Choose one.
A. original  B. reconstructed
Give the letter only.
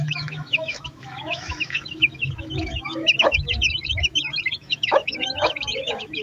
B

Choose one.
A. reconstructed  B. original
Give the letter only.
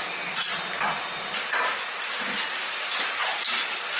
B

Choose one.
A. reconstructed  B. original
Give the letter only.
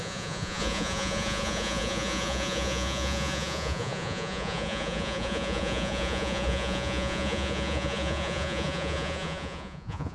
A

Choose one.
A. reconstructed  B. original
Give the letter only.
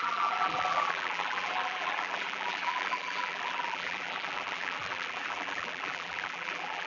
A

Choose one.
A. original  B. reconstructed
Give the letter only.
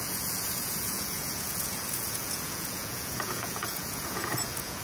B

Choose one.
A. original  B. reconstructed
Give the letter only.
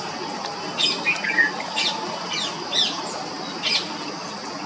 A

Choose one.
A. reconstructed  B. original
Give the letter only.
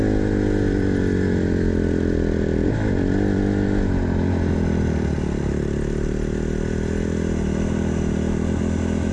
B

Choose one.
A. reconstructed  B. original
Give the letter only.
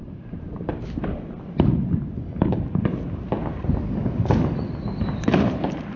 B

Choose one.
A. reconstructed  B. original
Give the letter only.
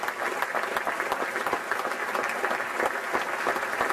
B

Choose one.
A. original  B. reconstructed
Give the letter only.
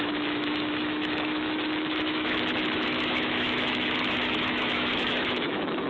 B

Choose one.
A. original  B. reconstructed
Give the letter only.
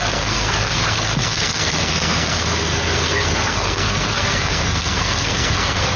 B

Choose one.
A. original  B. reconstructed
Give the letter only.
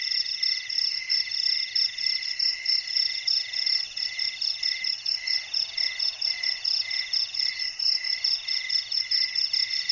A